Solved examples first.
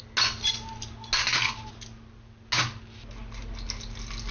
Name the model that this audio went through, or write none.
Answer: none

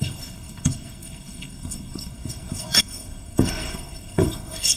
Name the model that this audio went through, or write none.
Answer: codec, SNAC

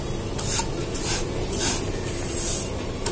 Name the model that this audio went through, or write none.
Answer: none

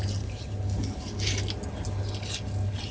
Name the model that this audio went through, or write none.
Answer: none